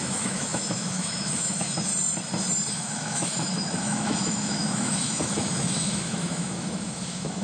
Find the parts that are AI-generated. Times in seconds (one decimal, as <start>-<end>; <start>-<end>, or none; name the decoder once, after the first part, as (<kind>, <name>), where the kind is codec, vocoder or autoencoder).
0.0-1.9 (autoencoder, DAC-VAE); 2.7-7.4